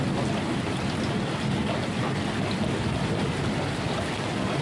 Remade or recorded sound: recorded